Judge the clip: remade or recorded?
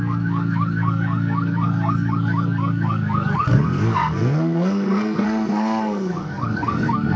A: remade